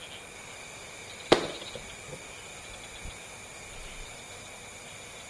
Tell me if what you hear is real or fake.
real